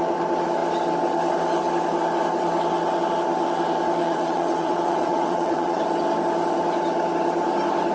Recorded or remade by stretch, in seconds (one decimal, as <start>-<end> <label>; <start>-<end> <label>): 0.0-4.0 recorded; 4.0-5.8 remade; 5.8-7.9 recorded